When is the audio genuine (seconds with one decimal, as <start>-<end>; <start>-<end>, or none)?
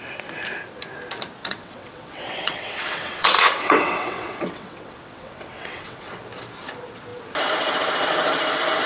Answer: 0.0-1.4; 6.1-8.9